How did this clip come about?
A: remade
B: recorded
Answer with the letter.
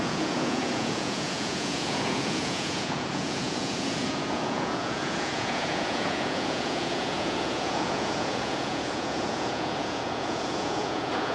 A